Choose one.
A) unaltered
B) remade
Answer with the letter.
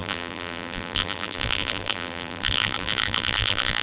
B